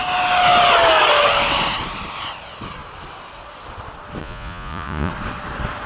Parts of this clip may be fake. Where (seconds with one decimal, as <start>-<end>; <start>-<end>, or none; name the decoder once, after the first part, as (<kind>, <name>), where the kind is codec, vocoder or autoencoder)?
4.2-5.1 (vocoder, Vocos)